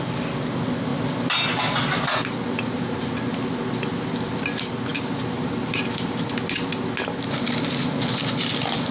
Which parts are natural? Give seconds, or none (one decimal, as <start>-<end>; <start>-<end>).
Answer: 0.0-8.9